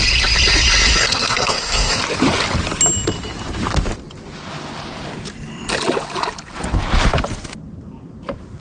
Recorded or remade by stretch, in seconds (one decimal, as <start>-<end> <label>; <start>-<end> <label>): 0.0-1.0 recorded; 1.0-2.0 remade; 2.0-8.6 recorded